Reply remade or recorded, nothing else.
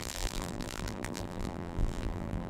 remade